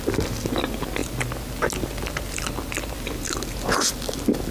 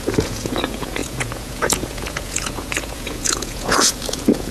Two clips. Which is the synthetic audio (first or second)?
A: second